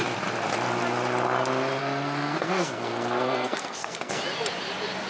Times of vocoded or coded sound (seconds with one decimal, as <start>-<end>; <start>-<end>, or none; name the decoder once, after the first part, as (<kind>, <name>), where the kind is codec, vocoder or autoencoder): 1.8-4.2 (codec, SNAC)